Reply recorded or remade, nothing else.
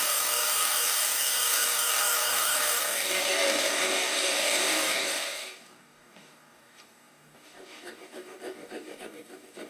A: remade